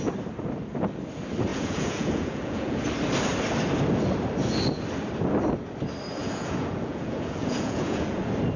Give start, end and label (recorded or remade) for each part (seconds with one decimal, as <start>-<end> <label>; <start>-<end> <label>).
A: 0.0-1.5 recorded; 1.5-2.8 remade; 2.8-6.2 recorded; 6.2-8.2 remade; 8.2-8.6 recorded